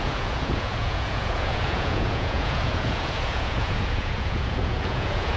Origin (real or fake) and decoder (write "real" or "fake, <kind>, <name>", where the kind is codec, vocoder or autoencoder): fake, vocoder, Vocos